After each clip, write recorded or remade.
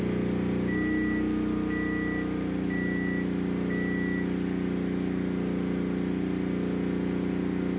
recorded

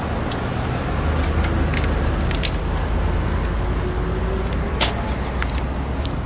recorded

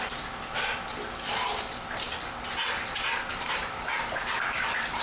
recorded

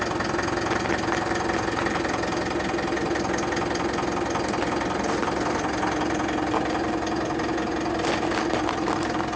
recorded